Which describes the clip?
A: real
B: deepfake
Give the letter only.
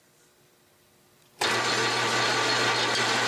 A